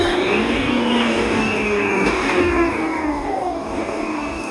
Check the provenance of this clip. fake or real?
fake